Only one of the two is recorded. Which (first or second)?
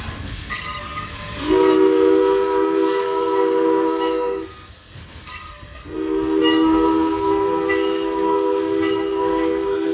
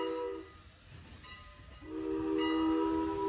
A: second